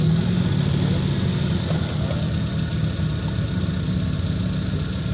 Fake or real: real